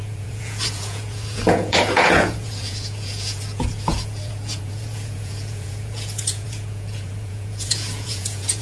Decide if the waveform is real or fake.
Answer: fake